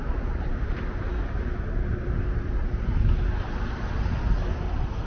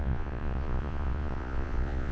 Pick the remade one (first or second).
second